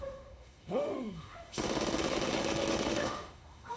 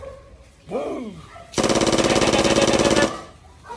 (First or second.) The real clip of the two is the second